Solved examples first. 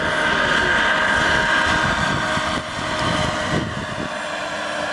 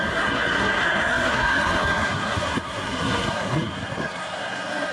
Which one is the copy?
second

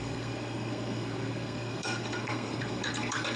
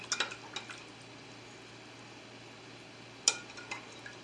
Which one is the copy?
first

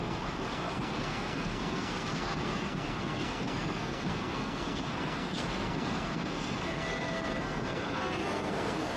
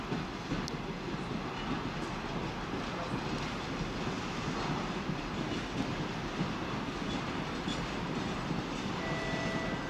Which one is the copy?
first